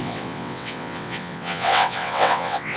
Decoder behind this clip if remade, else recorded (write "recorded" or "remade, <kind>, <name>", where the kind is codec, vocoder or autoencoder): remade, vocoder, WaveNeXt